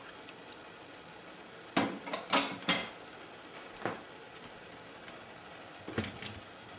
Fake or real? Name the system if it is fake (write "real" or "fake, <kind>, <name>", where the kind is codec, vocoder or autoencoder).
real